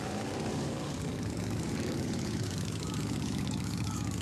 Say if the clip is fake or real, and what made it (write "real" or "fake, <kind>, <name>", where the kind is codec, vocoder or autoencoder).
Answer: fake, codec, DAC